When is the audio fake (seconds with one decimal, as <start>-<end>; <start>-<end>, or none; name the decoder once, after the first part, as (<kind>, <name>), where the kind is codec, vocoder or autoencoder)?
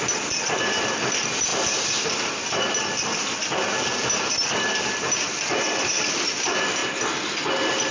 1.5-5.9 (vocoder, BigVGAN v2); 6.8-7.3